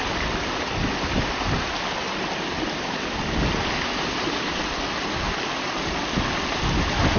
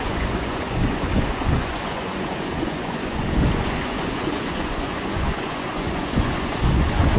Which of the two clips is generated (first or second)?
second